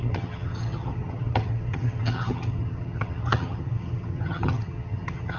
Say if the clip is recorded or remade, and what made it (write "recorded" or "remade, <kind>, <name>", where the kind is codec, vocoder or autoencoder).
remade, vocoder, HiFi-GAN